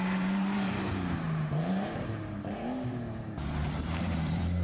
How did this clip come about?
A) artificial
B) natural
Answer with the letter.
A